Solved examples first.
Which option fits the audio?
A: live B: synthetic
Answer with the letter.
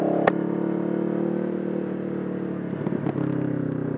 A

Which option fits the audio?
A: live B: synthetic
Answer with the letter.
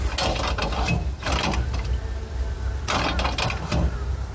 A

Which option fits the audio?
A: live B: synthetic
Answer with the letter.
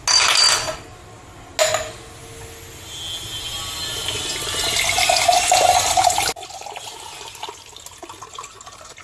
A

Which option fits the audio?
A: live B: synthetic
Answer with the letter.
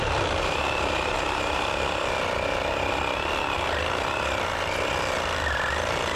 A